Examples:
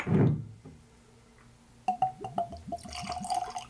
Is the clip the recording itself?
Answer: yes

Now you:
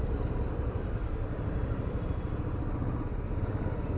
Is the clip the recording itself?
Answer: yes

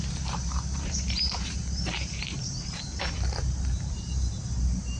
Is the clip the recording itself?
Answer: no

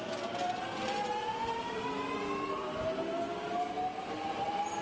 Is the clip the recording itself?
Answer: yes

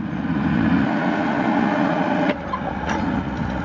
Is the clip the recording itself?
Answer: no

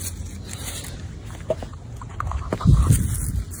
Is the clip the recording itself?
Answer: yes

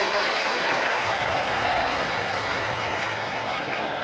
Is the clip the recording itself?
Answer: no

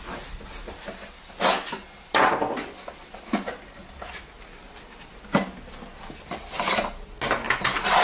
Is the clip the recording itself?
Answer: yes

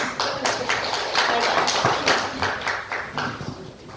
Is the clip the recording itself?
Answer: yes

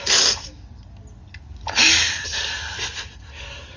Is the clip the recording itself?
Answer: yes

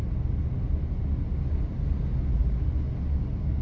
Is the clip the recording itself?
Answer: yes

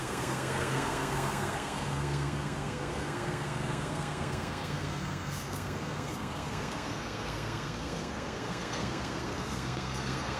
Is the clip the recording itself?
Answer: no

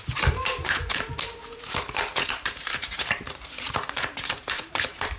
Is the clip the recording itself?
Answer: no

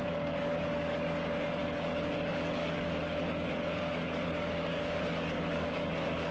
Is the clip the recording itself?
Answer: no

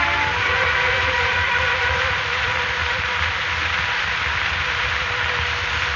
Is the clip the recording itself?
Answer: no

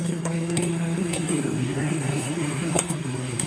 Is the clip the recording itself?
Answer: no